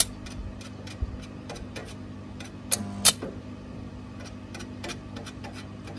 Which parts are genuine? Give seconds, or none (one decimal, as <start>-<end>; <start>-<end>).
0.0-6.0